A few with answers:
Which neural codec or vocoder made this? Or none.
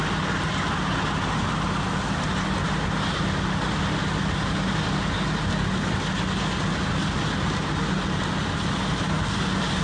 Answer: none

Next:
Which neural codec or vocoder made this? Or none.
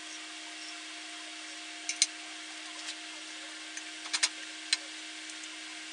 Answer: none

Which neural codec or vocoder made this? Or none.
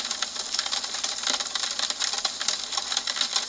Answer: none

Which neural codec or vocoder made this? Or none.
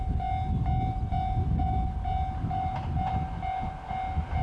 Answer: none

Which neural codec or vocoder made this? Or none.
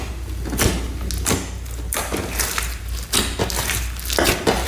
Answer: none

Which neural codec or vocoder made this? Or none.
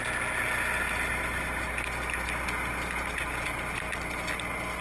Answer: none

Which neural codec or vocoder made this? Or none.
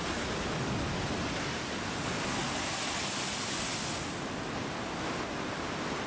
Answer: none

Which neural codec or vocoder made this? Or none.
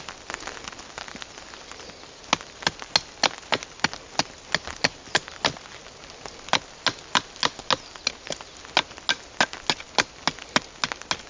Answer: none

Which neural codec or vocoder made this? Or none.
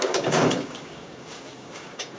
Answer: codec, DAC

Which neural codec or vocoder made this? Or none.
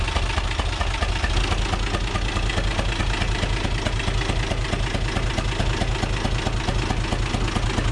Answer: none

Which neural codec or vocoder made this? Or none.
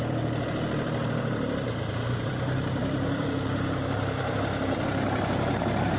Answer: vocoder, BigVGAN v2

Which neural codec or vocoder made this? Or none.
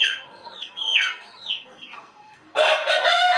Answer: codec, SNAC